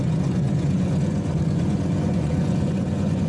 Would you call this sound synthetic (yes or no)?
yes